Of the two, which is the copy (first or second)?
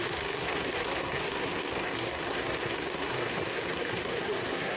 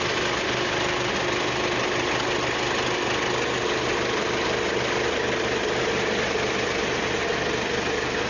first